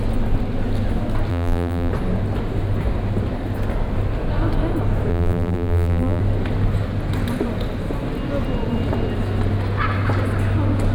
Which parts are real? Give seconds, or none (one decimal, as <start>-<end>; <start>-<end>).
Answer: 0.0-1.3; 1.9-5.1; 6.2-10.9